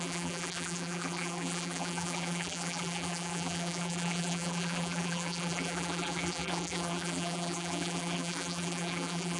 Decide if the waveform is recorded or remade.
remade